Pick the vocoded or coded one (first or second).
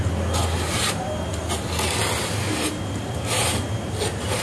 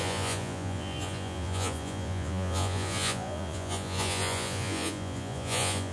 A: second